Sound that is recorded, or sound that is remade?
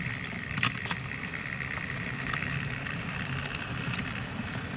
remade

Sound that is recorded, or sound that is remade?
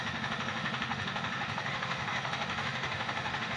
remade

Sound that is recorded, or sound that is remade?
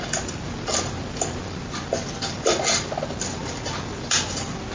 recorded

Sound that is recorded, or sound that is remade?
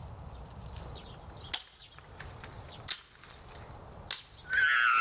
recorded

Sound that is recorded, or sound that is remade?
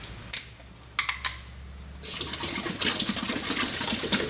recorded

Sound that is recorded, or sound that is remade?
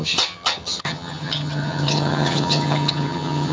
remade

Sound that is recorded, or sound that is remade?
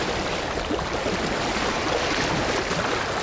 recorded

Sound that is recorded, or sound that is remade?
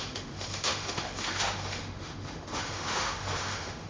remade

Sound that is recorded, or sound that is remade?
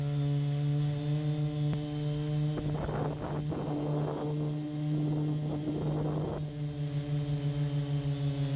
recorded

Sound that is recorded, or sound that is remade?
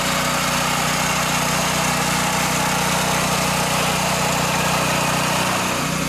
recorded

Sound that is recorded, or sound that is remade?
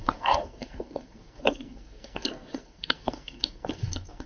remade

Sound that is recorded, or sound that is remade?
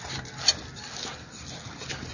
recorded